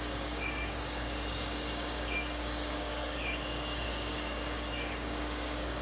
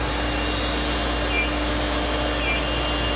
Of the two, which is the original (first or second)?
second